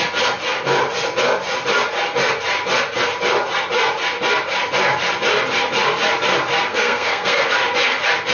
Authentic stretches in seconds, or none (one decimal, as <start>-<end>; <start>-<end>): 0.0-6.7; 7.5-8.3